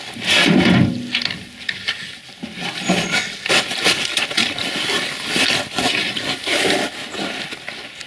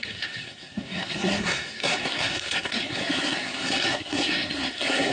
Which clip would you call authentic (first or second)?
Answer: first